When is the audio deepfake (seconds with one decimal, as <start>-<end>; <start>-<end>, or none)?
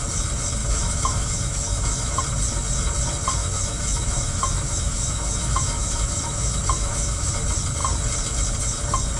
0.6-2.2; 3.4-7.3